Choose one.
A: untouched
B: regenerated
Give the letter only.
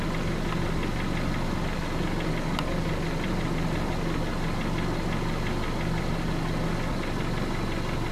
A